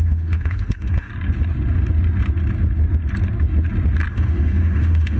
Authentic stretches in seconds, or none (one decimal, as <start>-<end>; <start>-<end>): 1.1-4.1